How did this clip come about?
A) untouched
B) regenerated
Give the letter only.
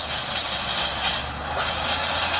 A